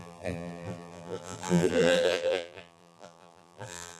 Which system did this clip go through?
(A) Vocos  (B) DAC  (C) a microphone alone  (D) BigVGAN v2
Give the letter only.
D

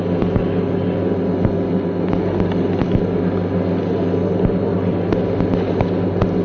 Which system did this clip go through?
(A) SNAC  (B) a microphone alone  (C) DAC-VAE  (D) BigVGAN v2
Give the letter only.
B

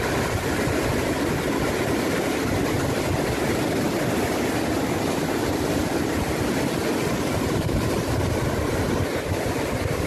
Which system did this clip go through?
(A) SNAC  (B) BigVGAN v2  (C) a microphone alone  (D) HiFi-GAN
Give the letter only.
B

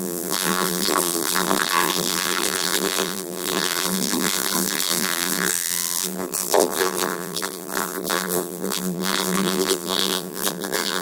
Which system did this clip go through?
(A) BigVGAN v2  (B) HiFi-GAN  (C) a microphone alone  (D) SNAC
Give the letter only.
A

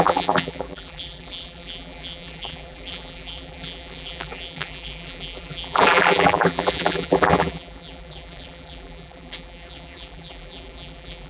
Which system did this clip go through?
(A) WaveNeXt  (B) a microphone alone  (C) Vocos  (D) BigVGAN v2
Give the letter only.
D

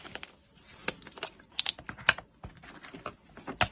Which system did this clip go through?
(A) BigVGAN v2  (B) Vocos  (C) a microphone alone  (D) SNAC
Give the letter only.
C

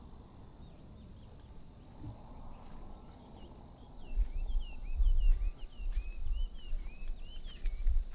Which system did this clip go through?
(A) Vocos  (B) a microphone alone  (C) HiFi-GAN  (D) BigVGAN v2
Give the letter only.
B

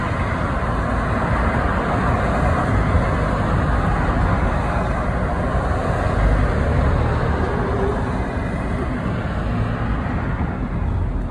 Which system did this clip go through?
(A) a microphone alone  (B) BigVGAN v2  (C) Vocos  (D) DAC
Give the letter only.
A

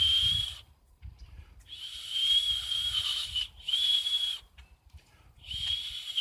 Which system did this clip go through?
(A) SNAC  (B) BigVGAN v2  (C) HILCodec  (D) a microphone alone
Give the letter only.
B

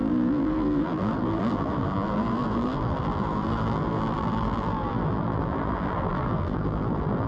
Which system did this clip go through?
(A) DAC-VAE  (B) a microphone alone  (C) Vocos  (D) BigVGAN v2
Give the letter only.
D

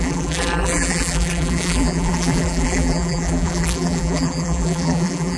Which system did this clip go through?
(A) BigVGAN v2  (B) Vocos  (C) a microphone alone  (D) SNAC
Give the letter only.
A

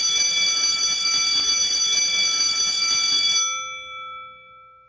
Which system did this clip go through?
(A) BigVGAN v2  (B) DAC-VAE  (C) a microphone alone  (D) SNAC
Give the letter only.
C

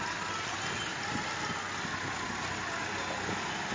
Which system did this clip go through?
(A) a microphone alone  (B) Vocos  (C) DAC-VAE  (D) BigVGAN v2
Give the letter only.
A